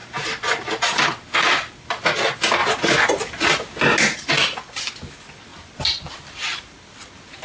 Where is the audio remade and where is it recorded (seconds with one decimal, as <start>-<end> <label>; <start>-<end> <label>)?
0.0-7.4 recorded